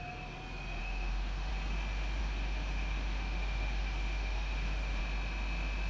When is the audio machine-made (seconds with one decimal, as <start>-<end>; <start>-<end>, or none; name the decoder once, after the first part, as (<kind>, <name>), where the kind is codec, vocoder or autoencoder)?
0.8-1.5 (autoencoder, DAC-VAE); 2.2-5.0